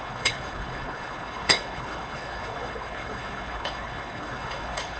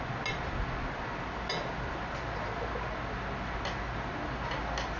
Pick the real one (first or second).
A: second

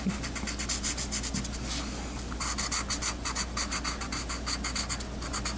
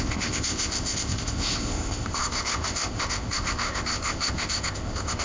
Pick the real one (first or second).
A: first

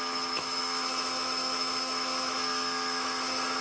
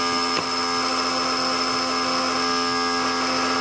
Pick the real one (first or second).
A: second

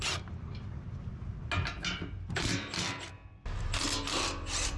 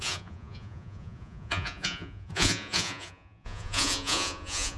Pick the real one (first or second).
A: first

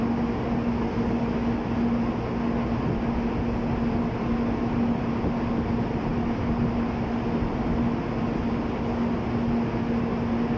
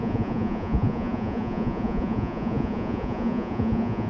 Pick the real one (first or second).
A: first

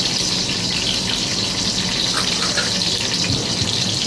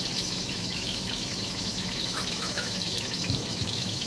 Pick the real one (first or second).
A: first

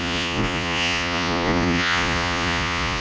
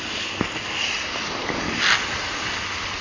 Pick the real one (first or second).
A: second